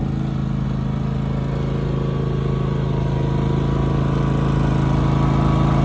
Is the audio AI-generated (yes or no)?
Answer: no